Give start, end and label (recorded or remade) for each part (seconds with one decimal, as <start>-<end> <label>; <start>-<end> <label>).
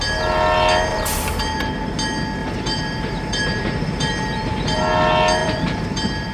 0.0-0.9 recorded; 0.9-1.4 remade; 1.4-2.4 recorded; 2.4-4.8 remade; 4.8-5.4 recorded; 5.4-6.3 remade